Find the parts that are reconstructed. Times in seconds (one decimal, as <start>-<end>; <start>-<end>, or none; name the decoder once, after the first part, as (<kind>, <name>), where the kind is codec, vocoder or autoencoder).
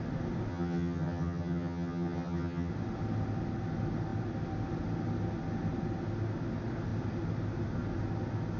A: 0.5-2.7 (vocoder, HiFi-GAN)